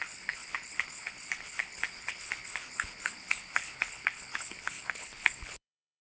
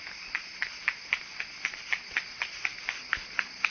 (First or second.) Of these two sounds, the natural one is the second